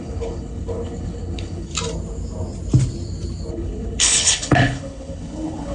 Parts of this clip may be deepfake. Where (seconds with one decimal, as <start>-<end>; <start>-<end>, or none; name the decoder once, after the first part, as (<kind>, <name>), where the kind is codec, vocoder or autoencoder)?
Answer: 0.0-1.7 (codec, HILCodec); 3.5-5.7